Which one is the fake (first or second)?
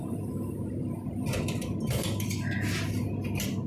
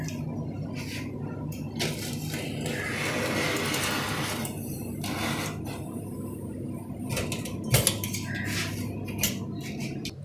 first